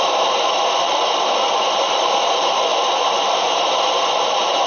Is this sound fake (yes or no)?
yes